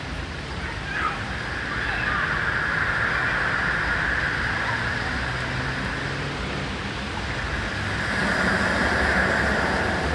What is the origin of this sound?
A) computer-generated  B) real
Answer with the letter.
B